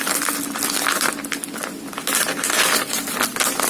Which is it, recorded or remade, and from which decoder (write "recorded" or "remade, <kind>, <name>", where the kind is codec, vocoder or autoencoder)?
recorded